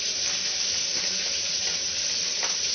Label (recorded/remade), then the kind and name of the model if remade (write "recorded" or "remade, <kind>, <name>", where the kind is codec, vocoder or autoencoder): remade, vocoder, BigVGAN v2